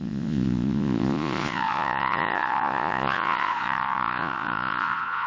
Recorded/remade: remade